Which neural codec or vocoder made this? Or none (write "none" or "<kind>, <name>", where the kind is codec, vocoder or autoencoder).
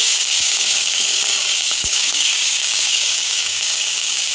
codec, DAC